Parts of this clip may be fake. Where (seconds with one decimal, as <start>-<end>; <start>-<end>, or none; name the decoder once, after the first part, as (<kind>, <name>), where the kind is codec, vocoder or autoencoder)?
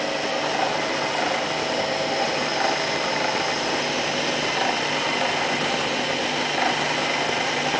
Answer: none